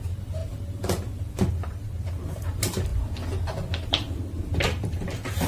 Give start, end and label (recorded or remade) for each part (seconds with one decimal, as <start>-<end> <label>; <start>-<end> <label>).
0.0-0.4 remade; 0.4-1.5 recorded; 1.5-2.9 remade; 2.9-3.9 recorded; 3.9-5.5 remade